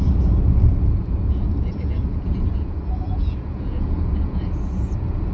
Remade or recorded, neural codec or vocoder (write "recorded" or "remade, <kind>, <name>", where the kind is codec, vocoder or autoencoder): remade, vocoder, Vocos